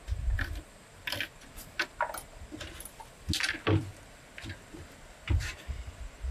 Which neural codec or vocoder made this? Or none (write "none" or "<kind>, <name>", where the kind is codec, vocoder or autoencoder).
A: none